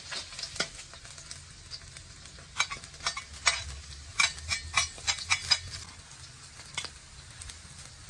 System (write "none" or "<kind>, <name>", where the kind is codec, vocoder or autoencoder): none